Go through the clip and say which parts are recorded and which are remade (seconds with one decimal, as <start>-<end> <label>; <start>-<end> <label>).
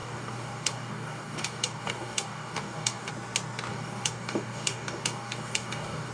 0.0-3.1 remade; 3.1-3.7 recorded; 3.7-6.1 remade